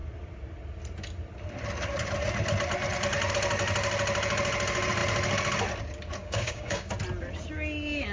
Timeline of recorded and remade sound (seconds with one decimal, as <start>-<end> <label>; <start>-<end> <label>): 0.0-6.2 recorded; 6.2-6.9 remade; 6.9-8.1 recorded